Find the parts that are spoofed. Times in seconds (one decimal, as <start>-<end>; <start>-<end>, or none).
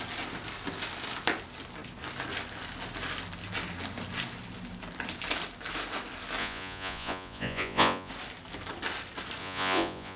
6.4-8.1; 9.4-10.2